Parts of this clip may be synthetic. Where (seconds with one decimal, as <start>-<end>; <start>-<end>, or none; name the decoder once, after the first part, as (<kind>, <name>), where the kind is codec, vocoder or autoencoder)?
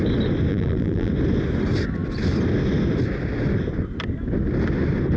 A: 0.5-1.1 (vocoder, BigVGAN v2)